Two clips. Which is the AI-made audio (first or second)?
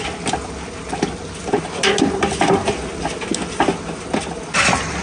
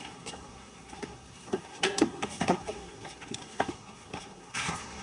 second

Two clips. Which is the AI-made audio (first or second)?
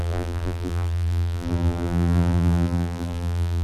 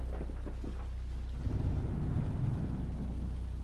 first